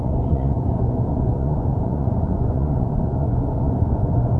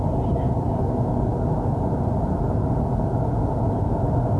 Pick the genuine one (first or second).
second